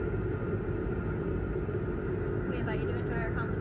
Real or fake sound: real